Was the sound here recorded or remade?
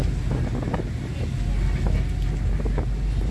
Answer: recorded